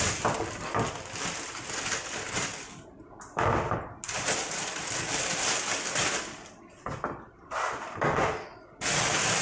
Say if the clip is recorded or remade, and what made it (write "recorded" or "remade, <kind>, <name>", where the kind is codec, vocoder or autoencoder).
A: recorded